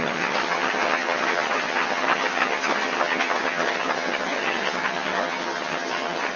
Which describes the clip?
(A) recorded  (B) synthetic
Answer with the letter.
B